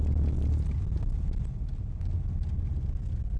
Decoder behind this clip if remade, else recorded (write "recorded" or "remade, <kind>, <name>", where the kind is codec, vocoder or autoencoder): recorded